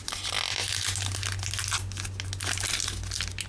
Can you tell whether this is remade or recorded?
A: recorded